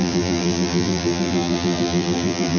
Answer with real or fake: fake